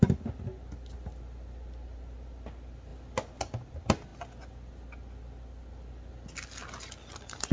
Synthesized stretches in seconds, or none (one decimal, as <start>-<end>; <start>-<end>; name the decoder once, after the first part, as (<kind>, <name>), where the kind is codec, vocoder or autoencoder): none